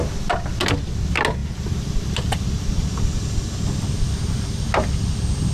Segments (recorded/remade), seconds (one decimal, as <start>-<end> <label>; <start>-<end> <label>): 0.0-1.4 recorded; 1.4-4.7 remade; 4.7-5.5 recorded